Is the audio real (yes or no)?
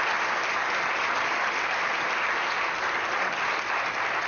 yes